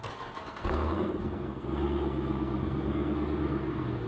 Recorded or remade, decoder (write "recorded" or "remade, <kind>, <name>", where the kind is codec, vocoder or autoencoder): remade, codec, SNAC